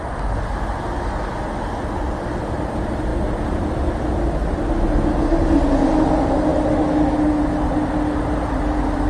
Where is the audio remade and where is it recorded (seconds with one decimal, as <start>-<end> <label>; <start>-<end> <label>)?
0.0-9.1 recorded

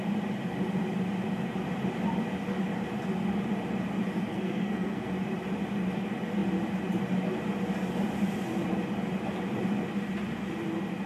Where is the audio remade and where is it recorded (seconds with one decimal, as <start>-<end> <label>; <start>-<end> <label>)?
0.0-4.3 recorded; 4.3-5.1 remade; 5.1-11.1 recorded

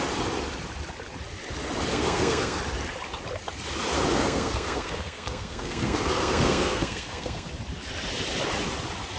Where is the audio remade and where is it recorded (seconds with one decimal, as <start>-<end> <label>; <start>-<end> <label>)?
0.0-1.9 recorded; 1.9-2.6 remade; 2.6-4.1 recorded; 4.1-7.5 remade; 7.5-9.2 recorded

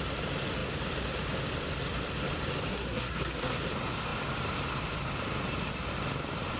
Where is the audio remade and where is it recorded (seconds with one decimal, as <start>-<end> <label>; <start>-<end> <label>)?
0.0-2.7 recorded; 2.7-3.6 remade; 3.6-6.6 recorded

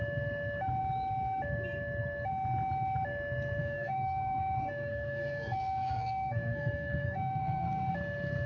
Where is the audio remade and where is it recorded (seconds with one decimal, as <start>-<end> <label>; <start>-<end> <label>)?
0.0-3.6 recorded; 3.6-7.9 remade; 7.9-8.5 recorded